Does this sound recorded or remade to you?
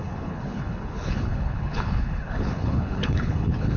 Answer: remade